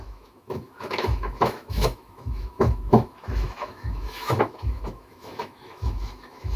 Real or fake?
fake